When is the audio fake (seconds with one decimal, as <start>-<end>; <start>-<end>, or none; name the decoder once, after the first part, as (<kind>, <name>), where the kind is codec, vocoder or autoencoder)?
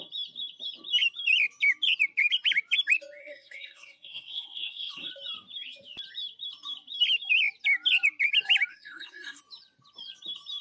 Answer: 3.2-5.1 (codec, SNAC); 8.7-9.4